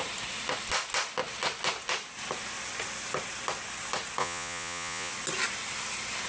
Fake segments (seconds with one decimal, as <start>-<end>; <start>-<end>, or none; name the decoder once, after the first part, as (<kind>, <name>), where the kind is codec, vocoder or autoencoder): 4.2-5.1 (vocoder, Vocos)